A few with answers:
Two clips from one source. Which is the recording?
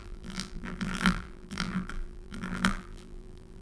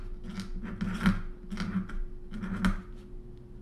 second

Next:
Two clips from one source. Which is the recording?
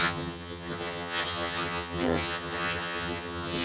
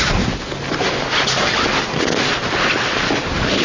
second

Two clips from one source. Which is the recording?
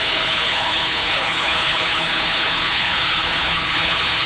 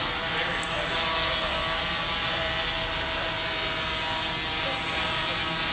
second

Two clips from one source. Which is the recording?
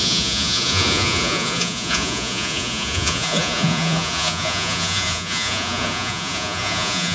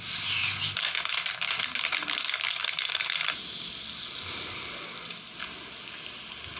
second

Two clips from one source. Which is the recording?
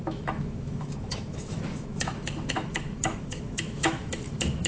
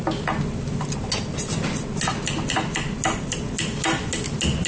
second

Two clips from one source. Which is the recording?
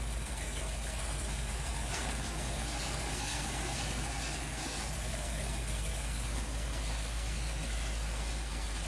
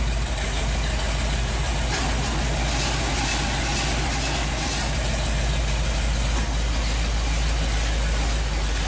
second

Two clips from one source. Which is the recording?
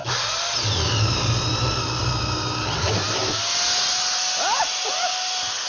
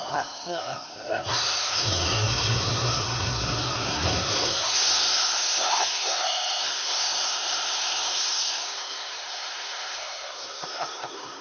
first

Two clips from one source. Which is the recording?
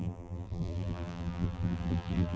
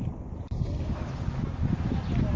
second